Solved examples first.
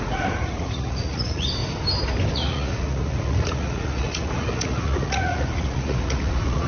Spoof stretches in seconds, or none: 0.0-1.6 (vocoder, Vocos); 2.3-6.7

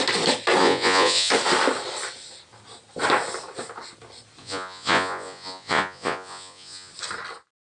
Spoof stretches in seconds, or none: 0.6-1.3 (vocoder, Vocos); 4.4-6.9